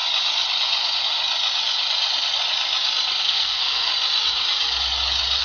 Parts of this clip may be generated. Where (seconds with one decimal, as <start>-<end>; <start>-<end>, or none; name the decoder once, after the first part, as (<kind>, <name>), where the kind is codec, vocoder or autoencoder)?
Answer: 3.2-3.9 (codec, SNAC)